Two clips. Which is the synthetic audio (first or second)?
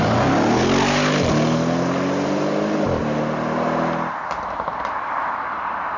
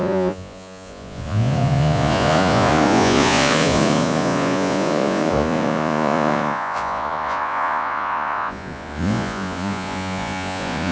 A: second